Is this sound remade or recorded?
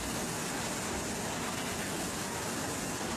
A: recorded